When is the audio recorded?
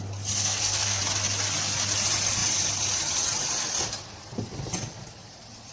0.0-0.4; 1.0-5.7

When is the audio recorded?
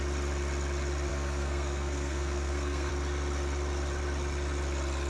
0.0-1.1; 2.9-5.1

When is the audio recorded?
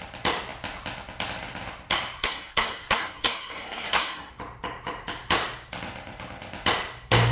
0.0-2.2; 4.3-7.3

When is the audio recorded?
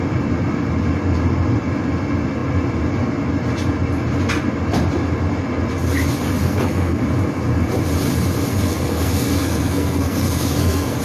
0.0-6.4; 7.0-8.5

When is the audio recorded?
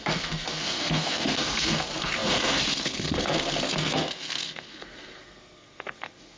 none